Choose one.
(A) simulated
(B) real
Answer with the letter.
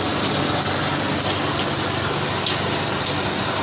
B